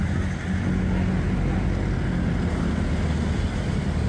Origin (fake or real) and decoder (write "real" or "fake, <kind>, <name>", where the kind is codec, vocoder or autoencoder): real